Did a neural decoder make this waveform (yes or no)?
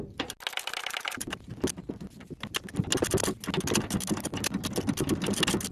no